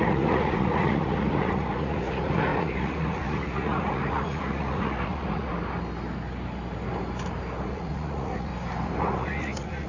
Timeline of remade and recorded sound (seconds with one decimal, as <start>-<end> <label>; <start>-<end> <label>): 0.0-5.5 remade; 5.5-7.6 recorded; 7.6-8.5 remade; 8.5-9.0 recorded; 9.0-9.9 remade